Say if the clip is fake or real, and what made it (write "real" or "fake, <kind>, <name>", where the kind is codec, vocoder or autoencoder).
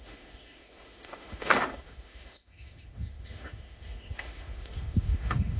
fake, autoencoder, DAC-VAE